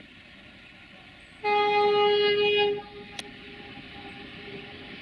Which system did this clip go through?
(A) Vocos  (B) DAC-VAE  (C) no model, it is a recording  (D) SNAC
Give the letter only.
C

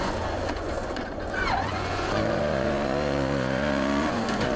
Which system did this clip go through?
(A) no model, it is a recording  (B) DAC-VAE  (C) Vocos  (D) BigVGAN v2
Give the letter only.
C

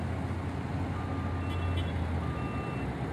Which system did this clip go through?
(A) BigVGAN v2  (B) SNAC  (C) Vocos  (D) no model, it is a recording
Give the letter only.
D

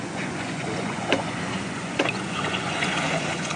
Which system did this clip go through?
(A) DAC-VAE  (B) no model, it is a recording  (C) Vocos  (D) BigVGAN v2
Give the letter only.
C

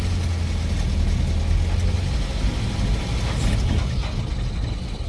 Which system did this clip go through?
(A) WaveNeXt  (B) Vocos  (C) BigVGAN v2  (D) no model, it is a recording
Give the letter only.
D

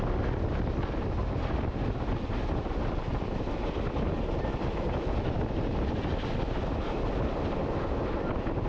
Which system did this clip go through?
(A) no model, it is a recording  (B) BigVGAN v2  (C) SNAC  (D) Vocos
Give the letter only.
A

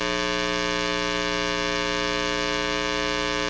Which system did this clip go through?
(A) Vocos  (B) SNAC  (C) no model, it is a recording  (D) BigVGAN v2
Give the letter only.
C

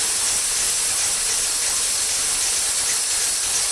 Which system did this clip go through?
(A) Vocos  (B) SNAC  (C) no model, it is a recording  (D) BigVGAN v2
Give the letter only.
C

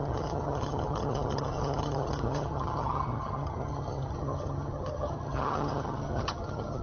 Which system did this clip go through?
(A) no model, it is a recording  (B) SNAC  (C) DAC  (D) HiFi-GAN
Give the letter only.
D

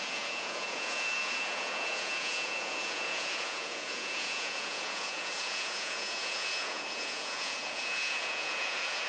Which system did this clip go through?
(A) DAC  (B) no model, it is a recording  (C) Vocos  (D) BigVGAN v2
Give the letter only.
C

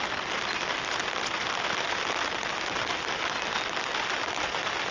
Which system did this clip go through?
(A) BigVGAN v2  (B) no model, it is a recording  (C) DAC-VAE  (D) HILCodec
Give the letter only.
B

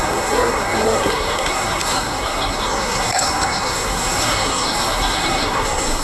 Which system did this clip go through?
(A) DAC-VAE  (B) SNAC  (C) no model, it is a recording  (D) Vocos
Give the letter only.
B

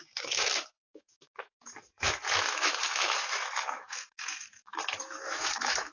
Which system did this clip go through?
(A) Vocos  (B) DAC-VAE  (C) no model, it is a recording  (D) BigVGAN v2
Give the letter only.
B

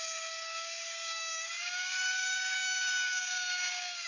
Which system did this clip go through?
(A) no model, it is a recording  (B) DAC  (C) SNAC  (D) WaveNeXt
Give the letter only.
B